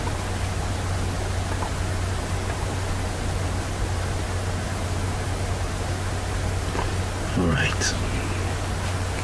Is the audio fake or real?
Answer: real